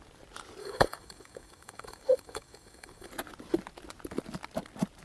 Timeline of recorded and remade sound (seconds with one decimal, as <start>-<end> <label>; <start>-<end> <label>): 0.0-0.6 recorded; 0.6-3.1 remade; 3.1-5.0 recorded